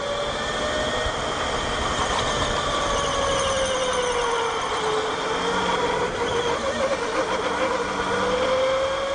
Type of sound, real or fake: real